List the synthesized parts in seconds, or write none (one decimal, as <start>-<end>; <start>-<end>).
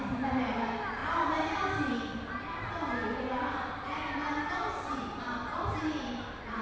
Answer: none